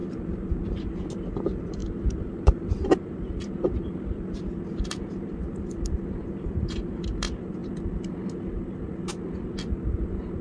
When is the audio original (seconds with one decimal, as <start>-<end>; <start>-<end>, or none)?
0.9-1.8; 3.1-6.2; 7.0-10.4